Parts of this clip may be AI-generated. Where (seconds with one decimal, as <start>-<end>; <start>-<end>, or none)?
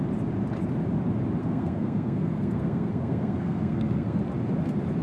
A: 1.4-4.2